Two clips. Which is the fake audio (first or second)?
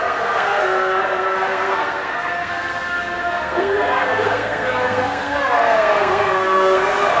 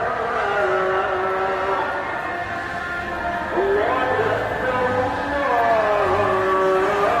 first